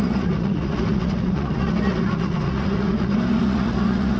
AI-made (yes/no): yes